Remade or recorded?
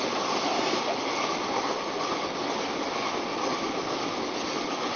recorded